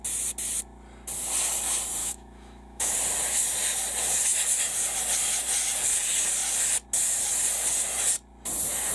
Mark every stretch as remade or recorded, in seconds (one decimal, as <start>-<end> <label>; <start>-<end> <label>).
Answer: 0.0-2.0 recorded; 2.0-2.9 remade; 2.9-8.9 recorded